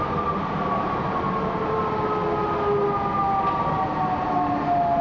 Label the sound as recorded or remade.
recorded